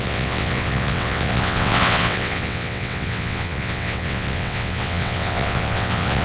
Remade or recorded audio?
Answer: remade